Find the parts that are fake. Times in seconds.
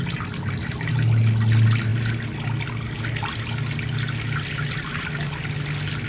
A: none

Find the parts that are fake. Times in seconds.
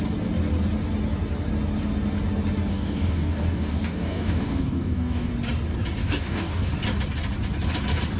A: 2.7-5.3 (codec, DAC); 6.0-6.7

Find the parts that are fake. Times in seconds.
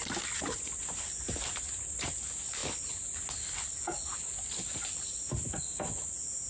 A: none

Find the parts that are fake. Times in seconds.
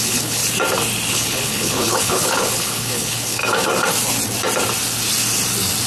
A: 0.0-0.4 (codec, HILCodec); 1.1-3.4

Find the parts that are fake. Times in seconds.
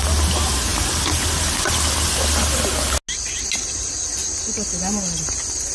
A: none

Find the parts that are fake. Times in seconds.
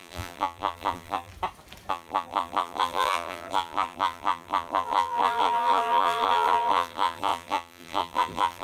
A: 0.0-1.3 (vocoder, BigVGAN v2); 1.9-8.6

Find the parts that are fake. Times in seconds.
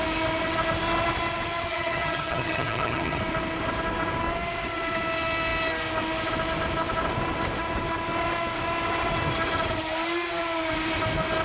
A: 1.7-3.2 (vocoder, HiFi-GAN)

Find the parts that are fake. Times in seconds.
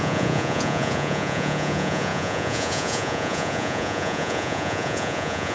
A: 0.0-5.5 (vocoder, Vocos)